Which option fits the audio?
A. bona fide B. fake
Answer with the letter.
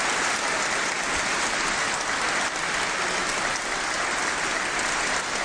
A